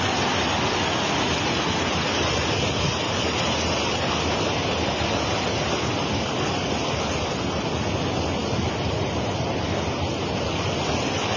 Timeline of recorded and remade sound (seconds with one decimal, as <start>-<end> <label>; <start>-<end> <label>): 0.0-11.4 recorded